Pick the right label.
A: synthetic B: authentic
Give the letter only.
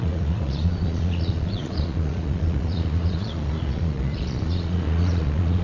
A